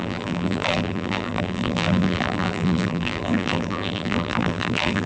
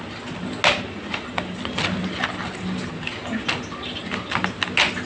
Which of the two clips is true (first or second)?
second